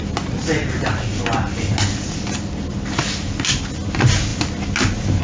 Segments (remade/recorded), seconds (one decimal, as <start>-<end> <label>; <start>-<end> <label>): 0.0-5.2 recorded